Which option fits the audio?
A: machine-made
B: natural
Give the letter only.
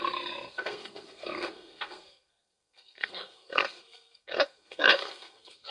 A